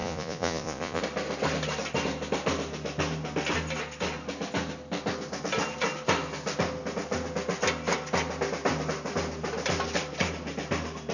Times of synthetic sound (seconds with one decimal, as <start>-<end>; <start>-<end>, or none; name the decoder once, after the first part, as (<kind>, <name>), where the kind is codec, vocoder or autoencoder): 0.0-1.0 (vocoder, Vocos)